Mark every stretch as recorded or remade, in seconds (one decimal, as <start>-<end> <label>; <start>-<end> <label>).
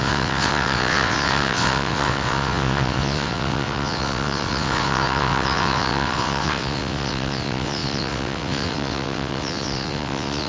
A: 0.0-10.5 remade